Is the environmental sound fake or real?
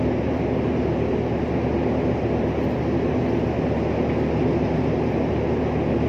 real